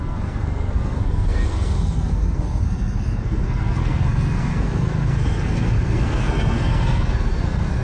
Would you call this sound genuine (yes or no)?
no